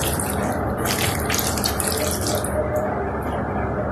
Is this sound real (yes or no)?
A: yes